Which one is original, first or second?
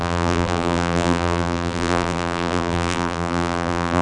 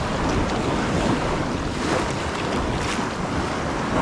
second